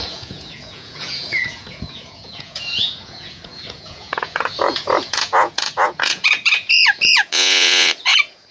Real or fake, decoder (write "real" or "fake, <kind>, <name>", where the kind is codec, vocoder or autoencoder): fake, vocoder, Vocos